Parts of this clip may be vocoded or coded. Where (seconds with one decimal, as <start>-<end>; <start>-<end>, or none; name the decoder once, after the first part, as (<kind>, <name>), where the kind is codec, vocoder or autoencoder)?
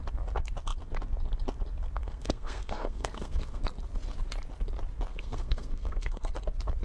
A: 2.0-3.6 (codec, SNAC); 5.1-6.3